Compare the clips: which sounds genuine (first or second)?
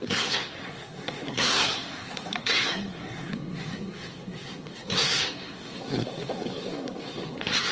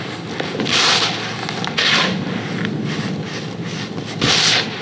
second